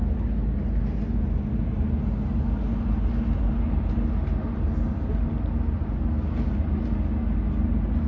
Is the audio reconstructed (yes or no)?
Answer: no